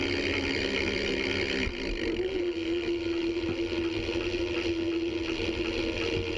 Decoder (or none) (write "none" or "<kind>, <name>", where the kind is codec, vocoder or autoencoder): none